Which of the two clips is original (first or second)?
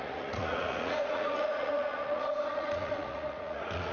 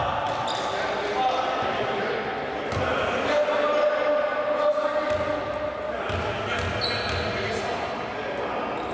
second